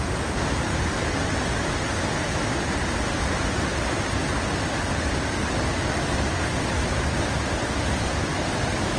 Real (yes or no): yes